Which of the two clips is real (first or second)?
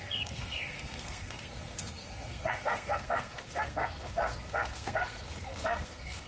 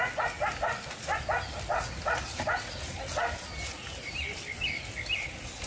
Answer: second